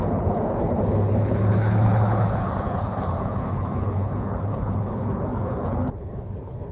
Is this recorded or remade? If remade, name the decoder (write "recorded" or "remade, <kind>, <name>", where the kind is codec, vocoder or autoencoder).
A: remade, codec, HILCodec